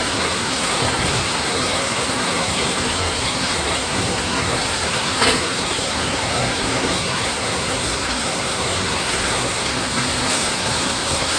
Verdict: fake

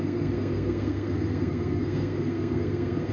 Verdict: fake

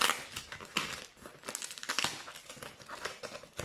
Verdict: real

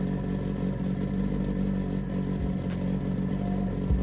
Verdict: real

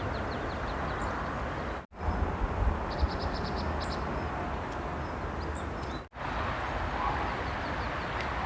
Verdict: real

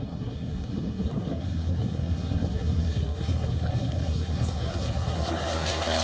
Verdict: fake